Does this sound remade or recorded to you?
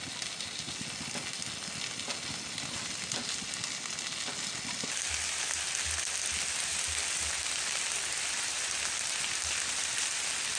recorded